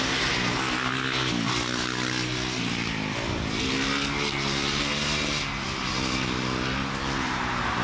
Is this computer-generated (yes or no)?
no